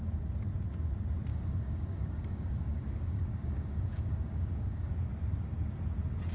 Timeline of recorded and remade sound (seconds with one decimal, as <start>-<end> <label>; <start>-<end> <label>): 0.0-1.3 recorded; 1.3-4.9 remade; 4.9-6.3 recorded